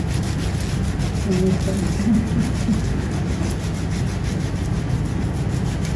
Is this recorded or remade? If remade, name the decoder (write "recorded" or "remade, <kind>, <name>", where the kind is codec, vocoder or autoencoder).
recorded